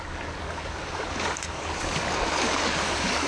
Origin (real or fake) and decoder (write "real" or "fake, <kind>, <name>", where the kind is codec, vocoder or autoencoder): fake, codec, DAC